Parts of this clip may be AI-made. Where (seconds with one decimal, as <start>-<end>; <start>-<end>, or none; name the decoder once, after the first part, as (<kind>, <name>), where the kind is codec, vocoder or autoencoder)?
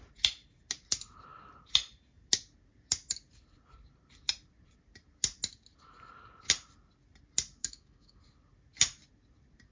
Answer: 7.6-8.2 (autoencoder, DAC-VAE)